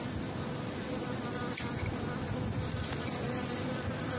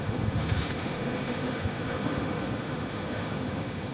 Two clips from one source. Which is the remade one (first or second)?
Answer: second